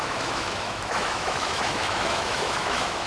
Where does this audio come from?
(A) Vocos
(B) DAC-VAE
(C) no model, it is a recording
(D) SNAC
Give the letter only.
B